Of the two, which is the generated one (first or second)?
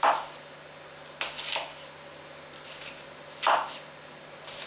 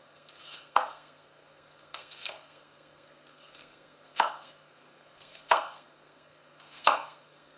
second